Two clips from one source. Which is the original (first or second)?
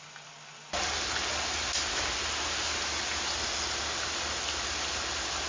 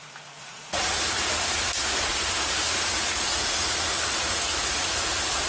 first